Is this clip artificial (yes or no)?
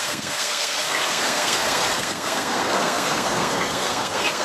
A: yes